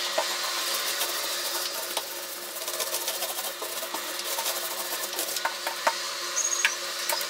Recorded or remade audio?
recorded